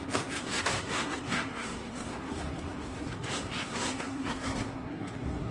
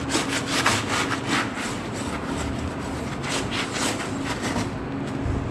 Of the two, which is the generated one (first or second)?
first